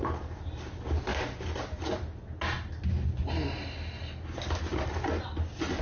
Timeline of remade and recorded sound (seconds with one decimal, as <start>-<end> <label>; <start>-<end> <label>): 0.0-5.8 recorded